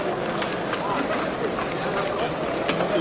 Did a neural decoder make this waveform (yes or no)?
no